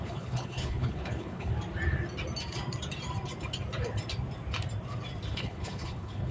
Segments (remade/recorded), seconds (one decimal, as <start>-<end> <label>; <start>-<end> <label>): 0.0-1.5 remade; 1.5-5.3 recorded; 5.3-6.3 remade